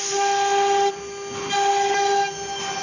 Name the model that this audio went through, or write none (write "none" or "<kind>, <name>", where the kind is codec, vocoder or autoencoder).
none